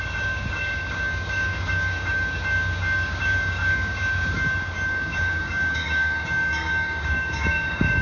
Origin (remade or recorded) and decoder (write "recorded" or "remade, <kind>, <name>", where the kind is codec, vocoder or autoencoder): remade, codec, DAC